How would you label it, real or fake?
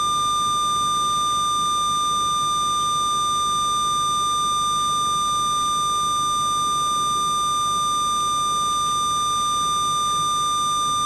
real